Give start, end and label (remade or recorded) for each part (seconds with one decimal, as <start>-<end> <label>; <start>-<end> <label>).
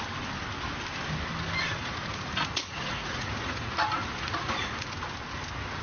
0.0-1.8 recorded; 1.8-4.9 remade; 4.9-5.8 recorded